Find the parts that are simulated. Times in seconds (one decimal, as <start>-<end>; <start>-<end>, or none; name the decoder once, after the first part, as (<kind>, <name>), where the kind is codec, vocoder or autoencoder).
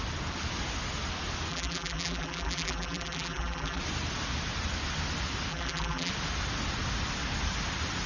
1.5-3.8 (vocoder, BigVGAN v2); 5.5-6.1